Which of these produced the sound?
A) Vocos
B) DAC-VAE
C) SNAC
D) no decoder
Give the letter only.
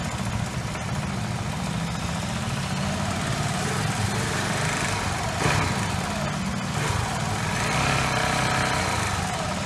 D